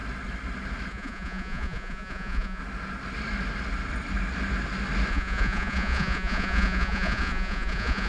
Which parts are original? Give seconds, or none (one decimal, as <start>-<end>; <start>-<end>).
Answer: 0.0-0.9; 2.6-5.1